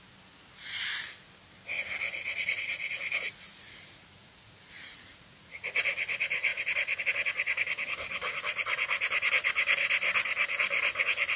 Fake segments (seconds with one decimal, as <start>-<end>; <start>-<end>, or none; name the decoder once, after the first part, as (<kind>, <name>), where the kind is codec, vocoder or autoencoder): 2.1-5.9 (vocoder, Vocos)